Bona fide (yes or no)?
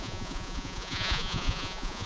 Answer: no